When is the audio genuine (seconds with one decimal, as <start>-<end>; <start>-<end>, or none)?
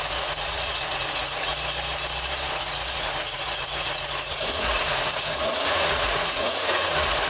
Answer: 1.5-2.6